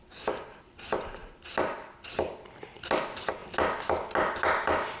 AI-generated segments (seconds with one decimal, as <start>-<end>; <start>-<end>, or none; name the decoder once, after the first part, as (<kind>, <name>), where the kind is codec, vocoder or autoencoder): none